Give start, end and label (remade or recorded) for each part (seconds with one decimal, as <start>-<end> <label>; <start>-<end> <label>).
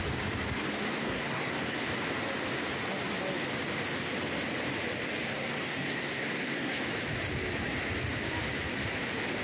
0.0-0.9 recorded; 0.9-1.9 remade; 1.9-5.3 recorded; 5.3-6.8 remade; 6.8-9.4 recorded